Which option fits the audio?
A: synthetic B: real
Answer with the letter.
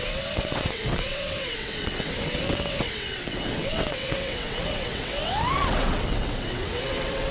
A